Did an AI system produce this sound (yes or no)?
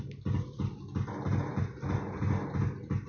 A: no